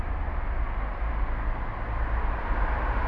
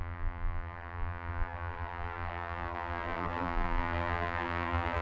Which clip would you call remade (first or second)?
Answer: second